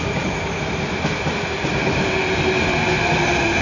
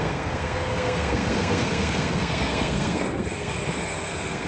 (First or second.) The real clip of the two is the first